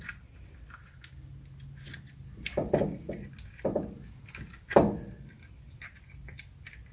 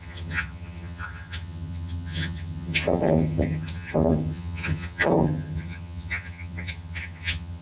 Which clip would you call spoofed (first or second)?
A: second